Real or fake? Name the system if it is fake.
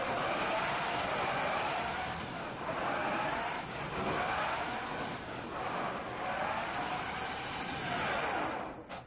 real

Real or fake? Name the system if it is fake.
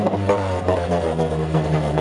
fake, codec, SNAC